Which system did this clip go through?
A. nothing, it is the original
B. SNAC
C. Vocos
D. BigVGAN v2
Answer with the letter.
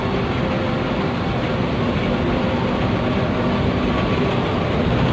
A